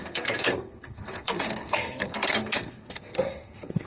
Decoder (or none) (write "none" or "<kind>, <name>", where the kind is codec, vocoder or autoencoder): codec, SNAC